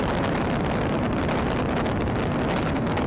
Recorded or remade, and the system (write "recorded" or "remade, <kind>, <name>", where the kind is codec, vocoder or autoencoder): recorded